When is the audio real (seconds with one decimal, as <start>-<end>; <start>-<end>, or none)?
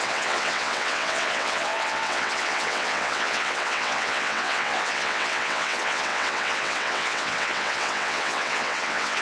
none